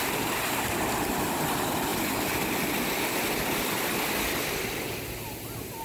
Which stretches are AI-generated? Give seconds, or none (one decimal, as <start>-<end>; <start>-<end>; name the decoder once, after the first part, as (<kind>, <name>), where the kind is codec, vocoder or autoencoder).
none

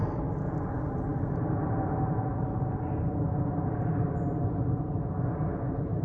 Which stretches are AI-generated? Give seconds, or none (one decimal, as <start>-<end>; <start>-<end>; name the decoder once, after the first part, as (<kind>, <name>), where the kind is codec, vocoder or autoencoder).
none

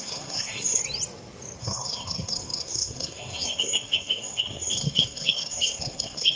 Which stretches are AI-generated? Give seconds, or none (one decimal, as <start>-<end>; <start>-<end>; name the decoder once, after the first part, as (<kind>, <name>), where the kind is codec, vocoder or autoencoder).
0.0-0.8 (codec, SNAC); 1.6-6.4

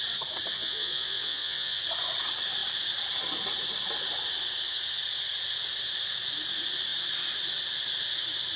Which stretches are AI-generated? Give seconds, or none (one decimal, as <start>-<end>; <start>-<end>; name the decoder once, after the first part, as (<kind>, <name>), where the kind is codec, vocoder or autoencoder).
0.5-1.8 (vocoder, Vocos)

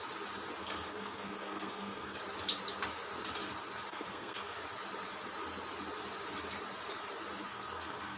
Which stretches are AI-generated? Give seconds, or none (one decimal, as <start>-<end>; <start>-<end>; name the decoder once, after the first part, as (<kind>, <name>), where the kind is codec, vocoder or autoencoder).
0.6-2.2 (codec, SNAC); 3.9-4.6; 7.5-8.2

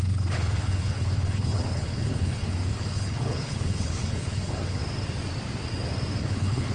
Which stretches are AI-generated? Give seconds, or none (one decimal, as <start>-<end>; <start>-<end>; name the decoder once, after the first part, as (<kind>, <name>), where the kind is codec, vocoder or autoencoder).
0.0-4.8 (codec, HILCodec); 6.2-6.7